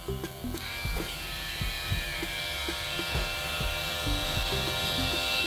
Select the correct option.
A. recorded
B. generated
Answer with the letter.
B